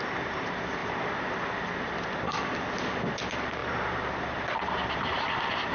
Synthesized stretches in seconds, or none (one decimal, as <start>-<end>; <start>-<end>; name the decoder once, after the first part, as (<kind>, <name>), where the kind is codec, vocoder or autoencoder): none